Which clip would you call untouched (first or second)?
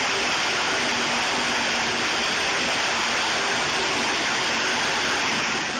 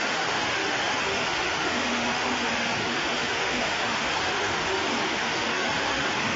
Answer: first